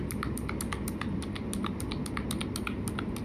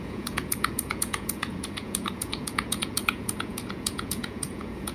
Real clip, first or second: first